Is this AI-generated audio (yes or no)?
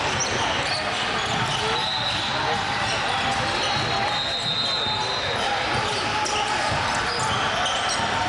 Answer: no